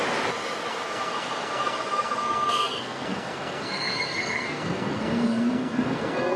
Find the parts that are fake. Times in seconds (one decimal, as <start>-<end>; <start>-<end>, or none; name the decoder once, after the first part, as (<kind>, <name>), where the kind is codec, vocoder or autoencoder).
0.7-6.4 (codec, SNAC)